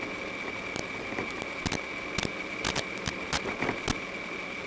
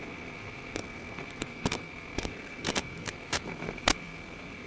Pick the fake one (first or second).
second